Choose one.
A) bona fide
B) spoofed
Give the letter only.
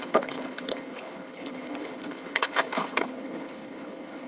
B